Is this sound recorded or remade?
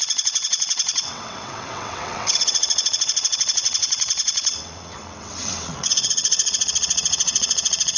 remade